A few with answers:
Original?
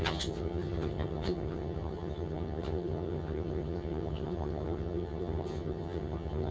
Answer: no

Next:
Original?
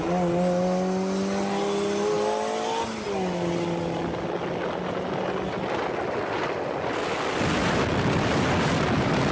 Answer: yes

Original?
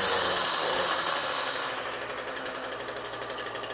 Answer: yes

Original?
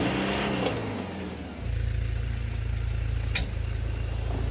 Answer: yes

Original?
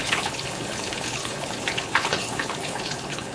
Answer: no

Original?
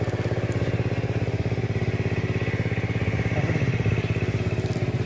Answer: yes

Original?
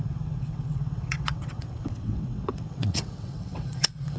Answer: no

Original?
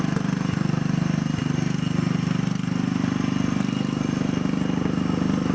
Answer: yes